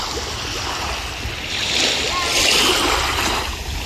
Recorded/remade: recorded